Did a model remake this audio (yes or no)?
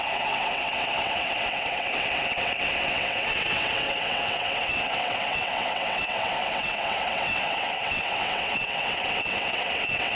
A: yes